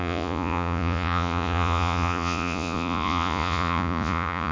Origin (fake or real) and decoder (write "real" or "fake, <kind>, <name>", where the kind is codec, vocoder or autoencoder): fake, vocoder, Vocos